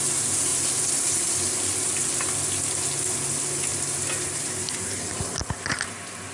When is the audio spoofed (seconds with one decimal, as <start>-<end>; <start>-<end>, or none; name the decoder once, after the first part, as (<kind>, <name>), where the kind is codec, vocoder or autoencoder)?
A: none